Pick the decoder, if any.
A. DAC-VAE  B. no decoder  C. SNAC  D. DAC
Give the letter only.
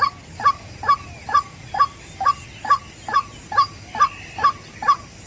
B